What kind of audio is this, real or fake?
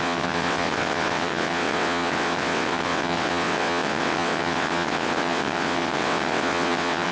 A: fake